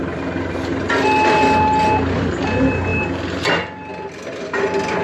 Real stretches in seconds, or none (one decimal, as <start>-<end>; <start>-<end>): 0.0-5.0

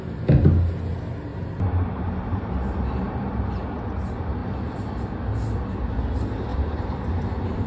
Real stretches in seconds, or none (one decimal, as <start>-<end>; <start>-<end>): 0.0-1.3; 3.5-6.5

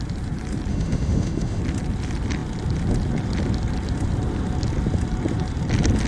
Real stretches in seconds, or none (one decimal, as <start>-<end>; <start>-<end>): 0.0-0.7; 1.6-6.1

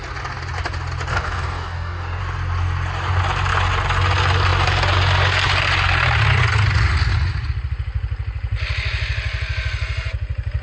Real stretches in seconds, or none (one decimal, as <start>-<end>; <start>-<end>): 0.0-1.1; 2.2-10.6

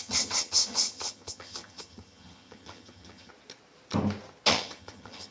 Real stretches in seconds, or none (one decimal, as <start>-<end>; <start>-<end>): 3.3-4.5

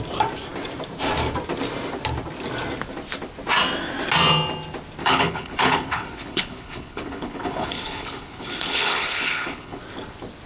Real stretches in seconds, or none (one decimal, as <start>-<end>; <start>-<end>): 0.0-5.0; 9.8-10.5